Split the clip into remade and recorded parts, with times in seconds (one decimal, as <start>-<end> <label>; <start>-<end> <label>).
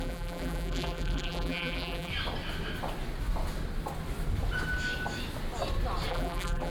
0.0-2.1 remade; 2.1-6.1 recorded; 6.1-6.7 remade